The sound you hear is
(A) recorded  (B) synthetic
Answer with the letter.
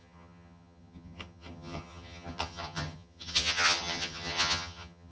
B